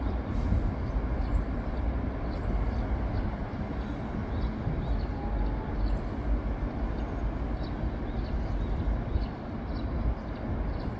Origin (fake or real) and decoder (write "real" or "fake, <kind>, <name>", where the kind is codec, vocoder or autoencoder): real